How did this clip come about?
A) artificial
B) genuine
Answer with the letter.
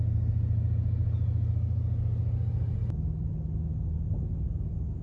B